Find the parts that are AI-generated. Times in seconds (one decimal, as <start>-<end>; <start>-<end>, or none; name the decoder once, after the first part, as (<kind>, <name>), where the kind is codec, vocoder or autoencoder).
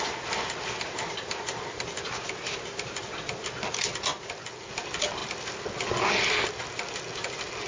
none